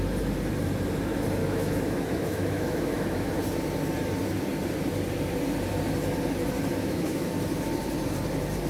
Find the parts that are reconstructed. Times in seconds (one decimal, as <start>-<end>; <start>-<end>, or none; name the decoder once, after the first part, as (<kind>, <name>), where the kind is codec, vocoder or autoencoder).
1.4-3.3 (autoencoder, DAC-VAE); 6.7-7.3